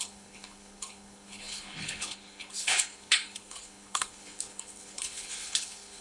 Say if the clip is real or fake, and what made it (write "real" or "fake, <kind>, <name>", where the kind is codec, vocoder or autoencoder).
fake, codec, HILCodec